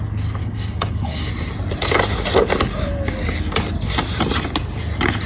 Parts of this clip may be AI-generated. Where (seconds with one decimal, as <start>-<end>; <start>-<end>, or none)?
0.4-1.3